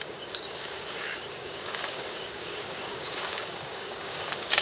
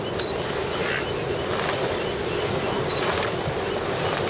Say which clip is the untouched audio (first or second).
second